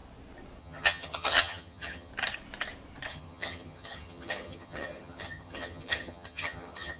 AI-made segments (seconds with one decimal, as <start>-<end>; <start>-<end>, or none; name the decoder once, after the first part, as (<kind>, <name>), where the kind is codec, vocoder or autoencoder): 0.6-2.1 (vocoder, HiFi-GAN); 3.1-7.0